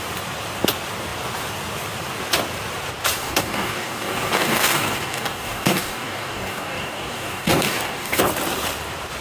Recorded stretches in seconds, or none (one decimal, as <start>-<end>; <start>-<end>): 0.0-3.2; 8.2-9.2